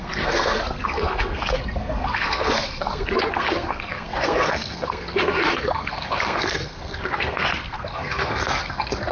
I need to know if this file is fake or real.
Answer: fake